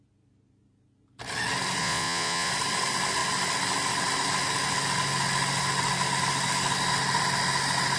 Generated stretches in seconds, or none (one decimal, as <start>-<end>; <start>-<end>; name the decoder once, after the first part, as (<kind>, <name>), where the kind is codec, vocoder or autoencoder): 1.8-2.5 (vocoder, Vocos)